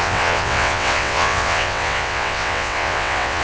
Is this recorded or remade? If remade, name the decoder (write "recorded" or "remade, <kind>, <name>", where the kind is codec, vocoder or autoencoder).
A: remade, vocoder, WaveNeXt